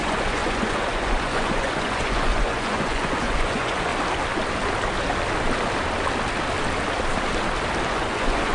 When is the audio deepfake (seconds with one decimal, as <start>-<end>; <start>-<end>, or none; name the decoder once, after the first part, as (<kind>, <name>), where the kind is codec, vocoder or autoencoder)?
0.0-3.9 (vocoder, Vocos); 7.9-8.5